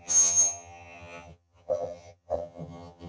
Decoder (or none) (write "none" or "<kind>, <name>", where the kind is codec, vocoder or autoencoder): vocoder, HiFi-GAN